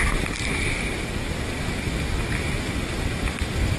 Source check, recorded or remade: recorded